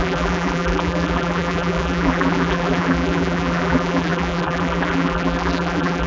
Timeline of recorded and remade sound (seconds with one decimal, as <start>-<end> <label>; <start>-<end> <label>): 0.0-6.1 remade